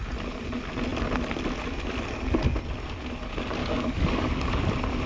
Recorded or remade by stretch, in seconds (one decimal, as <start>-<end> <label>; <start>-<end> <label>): 0.0-3.6 recorded; 3.6-4.6 remade; 4.6-5.1 recorded

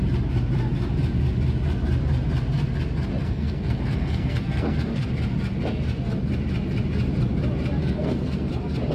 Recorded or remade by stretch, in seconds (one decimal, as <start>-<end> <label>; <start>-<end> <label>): 0.0-3.2 recorded; 3.2-5.1 remade; 5.1-7.8 recorded; 7.8-8.5 remade; 8.5-8.9 recorded

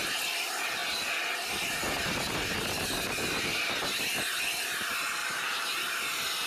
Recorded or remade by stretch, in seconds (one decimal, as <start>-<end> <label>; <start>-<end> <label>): 0.0-5.2 recorded; 5.2-6.0 remade; 6.0-6.5 recorded

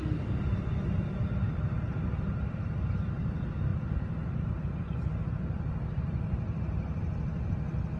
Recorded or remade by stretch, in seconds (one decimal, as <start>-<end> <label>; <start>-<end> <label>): 0.0-3.7 recorded; 3.7-5.1 remade; 5.1-8.0 recorded

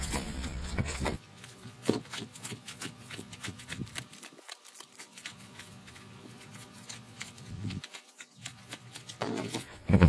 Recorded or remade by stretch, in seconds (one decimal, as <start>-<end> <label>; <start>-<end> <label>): 0.0-3.8 remade; 3.8-5.0 recorded; 5.0-10.1 remade

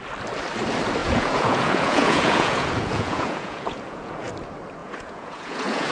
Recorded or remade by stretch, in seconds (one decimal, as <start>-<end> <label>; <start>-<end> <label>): 0.0-1.0 recorded; 1.0-4.3 remade; 4.3-4.8 recorded; 4.8-5.9 remade